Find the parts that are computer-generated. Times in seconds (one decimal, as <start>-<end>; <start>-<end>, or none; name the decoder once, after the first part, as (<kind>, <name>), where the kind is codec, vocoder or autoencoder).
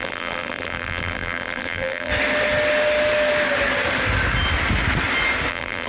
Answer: 0.0-2.1 (vocoder, BigVGAN v2); 5.5-5.9